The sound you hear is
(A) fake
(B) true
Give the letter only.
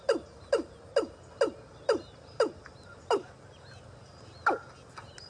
B